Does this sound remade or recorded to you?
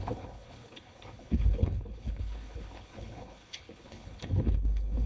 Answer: remade